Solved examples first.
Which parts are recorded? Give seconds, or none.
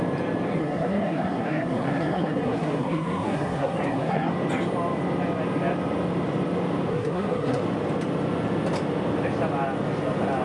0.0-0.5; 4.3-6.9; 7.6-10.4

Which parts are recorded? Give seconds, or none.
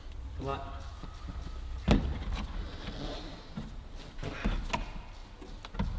0.0-6.0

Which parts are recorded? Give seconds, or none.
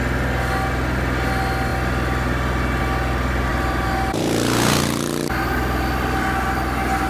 0.0-7.1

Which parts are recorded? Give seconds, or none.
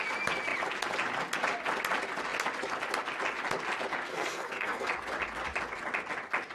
0.0-4.1; 4.9-6.5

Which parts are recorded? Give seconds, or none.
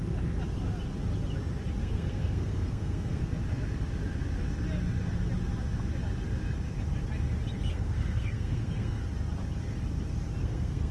0.0-1.8; 3.2-7.7; 9.0-10.4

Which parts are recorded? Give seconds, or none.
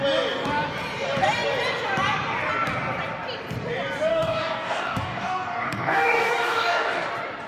0.0-4.1; 7.1-7.5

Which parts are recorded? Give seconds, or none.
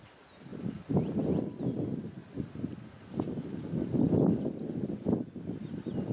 0.0-6.1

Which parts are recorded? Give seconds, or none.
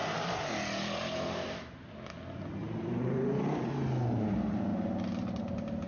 1.9-2.6; 3.5-5.9